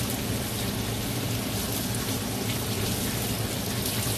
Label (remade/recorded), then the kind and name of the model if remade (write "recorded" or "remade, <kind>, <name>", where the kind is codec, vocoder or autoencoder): recorded